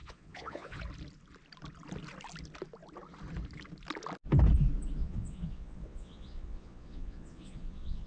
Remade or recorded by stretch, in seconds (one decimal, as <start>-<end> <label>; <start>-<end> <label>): 0.0-0.8 remade; 0.8-5.0 recorded; 5.0-8.1 remade